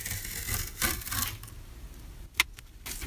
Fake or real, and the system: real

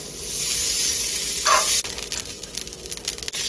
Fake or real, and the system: real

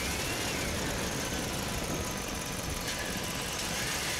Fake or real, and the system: real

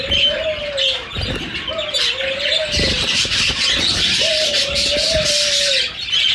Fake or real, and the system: real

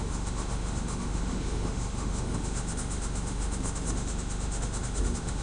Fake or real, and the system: fake, autoencoder, DAC-VAE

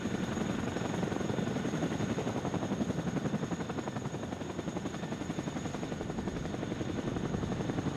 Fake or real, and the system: real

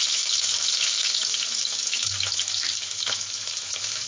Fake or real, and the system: fake, autoencoder, DAC-VAE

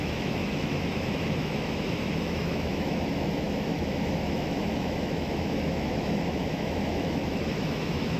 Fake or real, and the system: fake, autoencoder, DAC-VAE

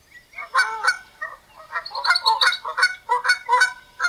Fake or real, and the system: real